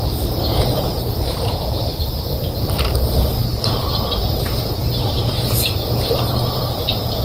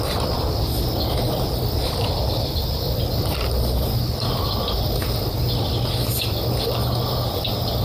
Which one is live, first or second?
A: second